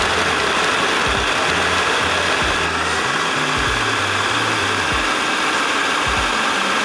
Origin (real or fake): real